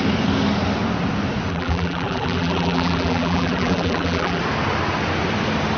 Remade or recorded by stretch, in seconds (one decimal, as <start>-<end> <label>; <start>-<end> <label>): 0.0-1.5 recorded; 1.5-4.4 remade; 4.4-5.8 recorded